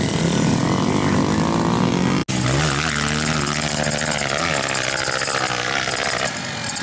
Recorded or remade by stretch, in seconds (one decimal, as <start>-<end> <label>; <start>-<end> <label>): 0.0-6.8 recorded